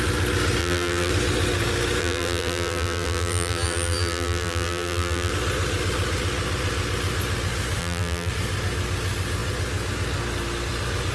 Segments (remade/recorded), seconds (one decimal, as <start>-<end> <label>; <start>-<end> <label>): 0.0-0.6 recorded; 0.6-1.1 remade; 1.1-2.0 recorded; 2.0-5.3 remade; 5.3-7.8 recorded; 7.8-8.3 remade; 8.3-11.1 recorded